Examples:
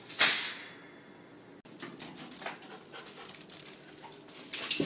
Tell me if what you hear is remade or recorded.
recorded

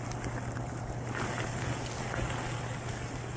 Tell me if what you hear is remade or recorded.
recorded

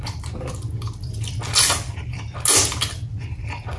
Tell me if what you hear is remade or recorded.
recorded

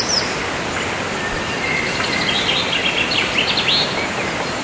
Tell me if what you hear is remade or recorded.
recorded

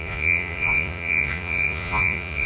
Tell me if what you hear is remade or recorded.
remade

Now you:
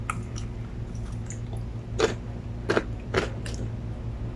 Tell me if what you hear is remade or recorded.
recorded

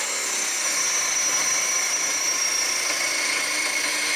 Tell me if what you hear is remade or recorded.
recorded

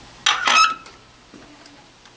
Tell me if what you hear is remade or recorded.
recorded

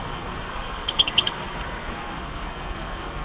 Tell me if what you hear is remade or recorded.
remade